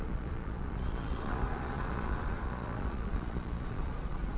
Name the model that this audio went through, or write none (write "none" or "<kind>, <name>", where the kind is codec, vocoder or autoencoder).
vocoder, Vocos